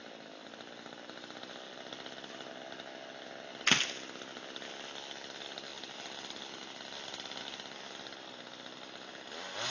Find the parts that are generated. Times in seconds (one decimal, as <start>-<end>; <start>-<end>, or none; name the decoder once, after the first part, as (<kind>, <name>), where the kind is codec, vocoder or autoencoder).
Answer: none